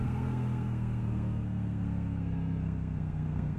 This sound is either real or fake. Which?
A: fake